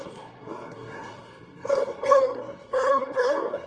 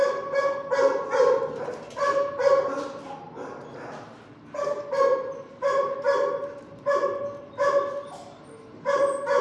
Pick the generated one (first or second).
first